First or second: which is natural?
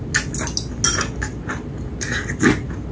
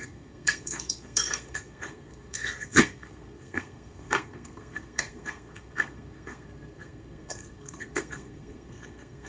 first